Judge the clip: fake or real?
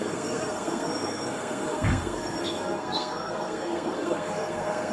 fake